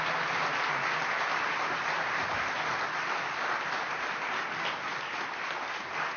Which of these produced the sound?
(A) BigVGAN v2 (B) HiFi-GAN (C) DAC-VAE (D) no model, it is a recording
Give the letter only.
D